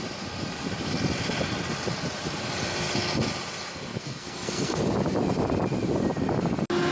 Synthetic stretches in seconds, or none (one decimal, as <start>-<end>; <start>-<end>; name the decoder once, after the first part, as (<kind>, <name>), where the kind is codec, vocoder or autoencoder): 3.9-4.8 (codec, SNAC)